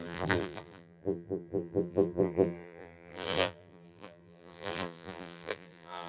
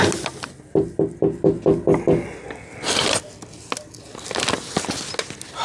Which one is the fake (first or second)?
first